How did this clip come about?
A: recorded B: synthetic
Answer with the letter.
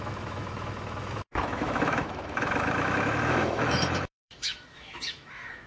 B